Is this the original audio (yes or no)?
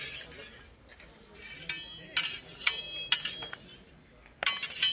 yes